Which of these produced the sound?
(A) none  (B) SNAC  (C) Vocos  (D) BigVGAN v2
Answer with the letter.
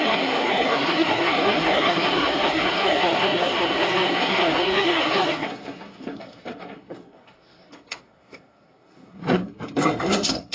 B